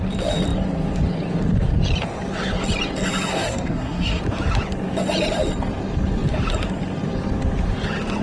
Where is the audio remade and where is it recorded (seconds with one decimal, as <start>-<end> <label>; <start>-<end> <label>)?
0.0-3.3 recorded; 3.3-4.2 remade; 4.2-8.2 recorded

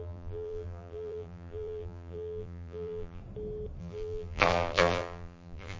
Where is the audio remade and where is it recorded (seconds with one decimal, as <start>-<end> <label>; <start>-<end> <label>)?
0.0-3.2 remade; 3.2-3.8 recorded; 3.8-5.8 remade

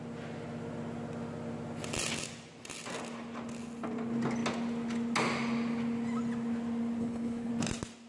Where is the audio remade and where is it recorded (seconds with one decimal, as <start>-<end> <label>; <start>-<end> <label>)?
0.0-7.0 recorded; 7.0-7.5 remade; 7.5-8.1 recorded

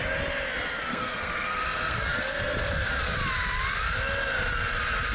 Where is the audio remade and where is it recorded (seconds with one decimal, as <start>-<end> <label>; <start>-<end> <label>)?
0.0-0.9 recorded; 0.9-2.1 remade; 2.1-5.1 recorded